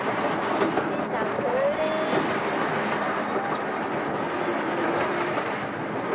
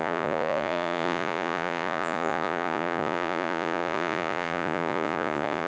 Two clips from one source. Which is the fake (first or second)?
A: second